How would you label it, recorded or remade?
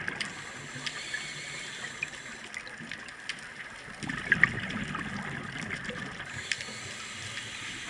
recorded